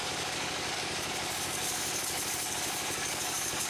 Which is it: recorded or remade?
remade